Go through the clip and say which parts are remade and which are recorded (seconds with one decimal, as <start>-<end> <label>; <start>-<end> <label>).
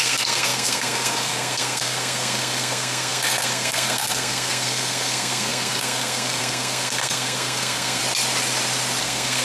0.0-8.0 remade; 8.0-9.0 recorded; 9.0-9.4 remade